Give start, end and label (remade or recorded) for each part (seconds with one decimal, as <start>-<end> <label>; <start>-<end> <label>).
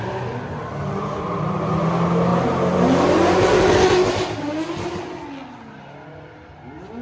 0.0-7.0 recorded